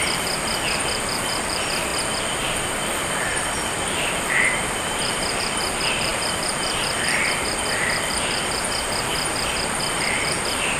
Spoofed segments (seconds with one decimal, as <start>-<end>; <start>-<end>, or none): 0.0-10.8